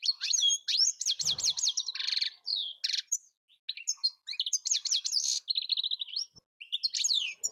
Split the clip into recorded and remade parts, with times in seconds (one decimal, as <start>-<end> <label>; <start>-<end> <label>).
0.0-7.5 recorded